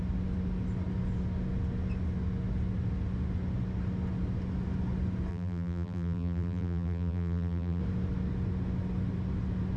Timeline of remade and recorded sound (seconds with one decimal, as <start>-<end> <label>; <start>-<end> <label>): 0.0-5.3 recorded; 5.3-7.8 remade; 7.8-9.8 recorded